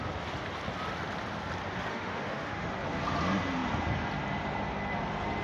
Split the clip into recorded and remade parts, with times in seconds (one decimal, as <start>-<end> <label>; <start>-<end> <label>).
0.0-1.9 recorded; 1.9-2.7 remade; 2.7-5.4 recorded